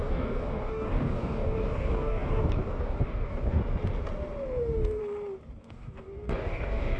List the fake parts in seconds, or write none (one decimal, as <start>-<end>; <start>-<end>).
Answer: 0.0-3.6; 4.6-5.0; 5.6-7.0